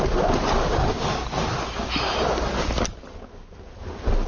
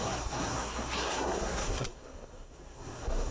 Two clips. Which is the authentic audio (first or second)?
first